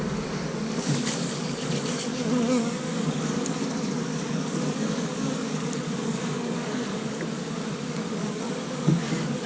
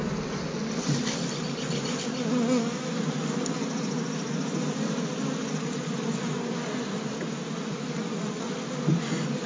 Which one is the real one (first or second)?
second